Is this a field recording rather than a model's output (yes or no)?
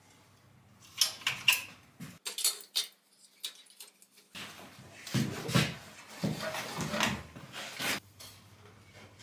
yes